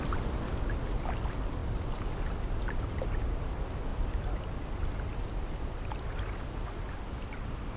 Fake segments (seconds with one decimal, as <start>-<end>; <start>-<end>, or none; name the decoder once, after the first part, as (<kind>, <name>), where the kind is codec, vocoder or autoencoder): 1.6-3.4 (vocoder, BigVGAN v2)